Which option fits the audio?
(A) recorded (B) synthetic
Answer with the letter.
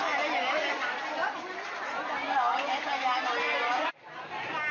A